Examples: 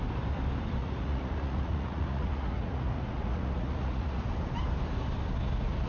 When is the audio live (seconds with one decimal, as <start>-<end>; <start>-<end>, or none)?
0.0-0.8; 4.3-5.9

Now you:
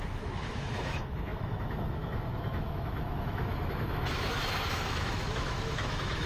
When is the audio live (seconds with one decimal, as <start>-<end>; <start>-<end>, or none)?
none

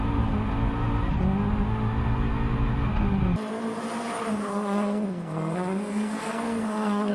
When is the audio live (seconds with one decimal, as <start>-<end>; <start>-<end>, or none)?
0.0-4.5

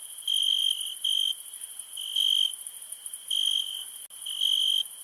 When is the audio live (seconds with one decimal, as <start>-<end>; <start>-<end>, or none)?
0.0-0.6; 1.3-5.0

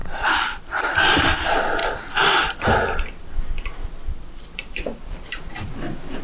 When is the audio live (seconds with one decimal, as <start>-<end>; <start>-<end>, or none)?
0.8-1.8; 5.5-6.2

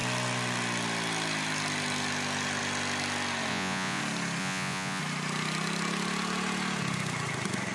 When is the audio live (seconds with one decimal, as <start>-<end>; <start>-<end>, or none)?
0.0-3.5; 4.0-4.4; 5.0-7.7